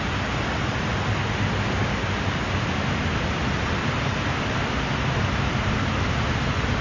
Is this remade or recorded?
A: recorded